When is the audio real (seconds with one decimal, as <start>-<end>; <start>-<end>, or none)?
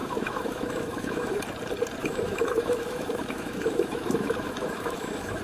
1.4-2.0